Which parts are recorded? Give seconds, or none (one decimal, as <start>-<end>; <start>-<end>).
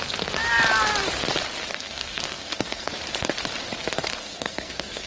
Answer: 0.0-1.7; 2.9-4.2